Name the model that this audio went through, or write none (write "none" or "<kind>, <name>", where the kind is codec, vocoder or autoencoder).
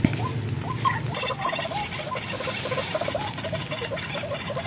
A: none